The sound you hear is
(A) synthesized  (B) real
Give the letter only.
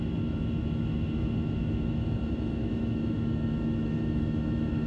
A